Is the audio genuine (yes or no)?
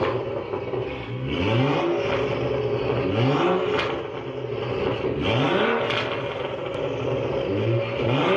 yes